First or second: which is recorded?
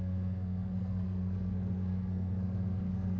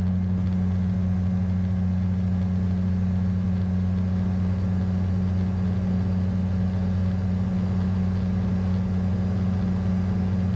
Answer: second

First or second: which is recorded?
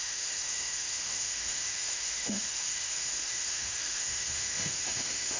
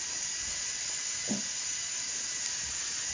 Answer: second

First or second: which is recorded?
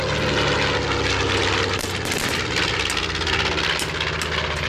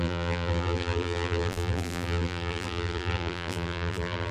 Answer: first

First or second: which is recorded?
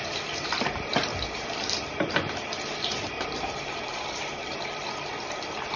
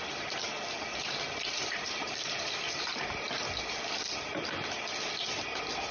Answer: second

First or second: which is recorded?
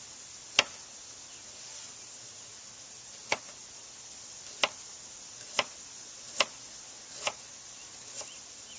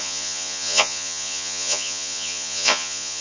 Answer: first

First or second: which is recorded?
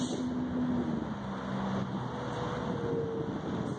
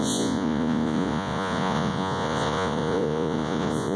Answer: first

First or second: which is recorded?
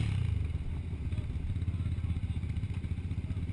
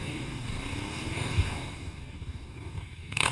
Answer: first